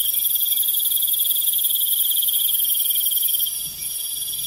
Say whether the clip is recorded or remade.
recorded